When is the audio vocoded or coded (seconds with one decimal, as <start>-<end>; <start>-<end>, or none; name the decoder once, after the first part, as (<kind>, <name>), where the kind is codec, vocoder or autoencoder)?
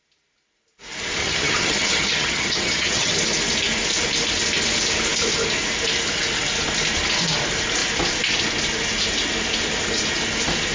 1.2-3.1 (vocoder, HiFi-GAN)